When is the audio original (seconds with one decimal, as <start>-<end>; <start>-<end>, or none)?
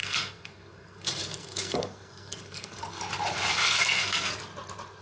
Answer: 3.0-3.5; 4.3-5.0